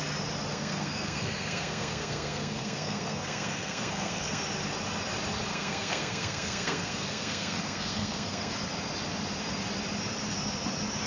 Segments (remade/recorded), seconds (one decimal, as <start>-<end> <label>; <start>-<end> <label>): 0.0-0.5 recorded; 0.5-4.4 remade; 4.4-5.5 recorded; 5.5-8.5 remade; 8.5-11.1 recorded